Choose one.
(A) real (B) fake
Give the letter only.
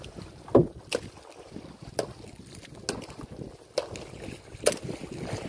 A